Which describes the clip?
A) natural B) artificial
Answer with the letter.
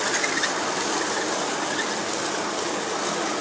A